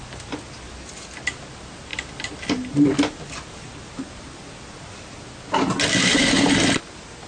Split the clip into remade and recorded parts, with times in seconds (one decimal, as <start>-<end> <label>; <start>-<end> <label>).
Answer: 0.0-7.3 recorded